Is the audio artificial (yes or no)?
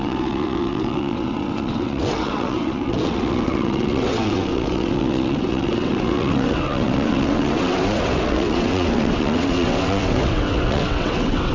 yes